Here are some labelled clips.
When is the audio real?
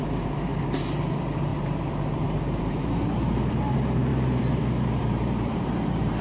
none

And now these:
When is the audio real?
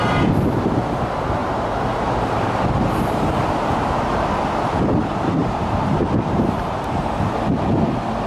0.0-1.4; 4.3-5.4; 7.0-8.3